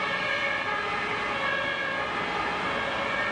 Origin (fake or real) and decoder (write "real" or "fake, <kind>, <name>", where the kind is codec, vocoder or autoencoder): real